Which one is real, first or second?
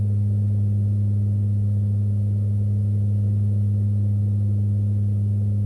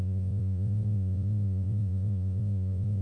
first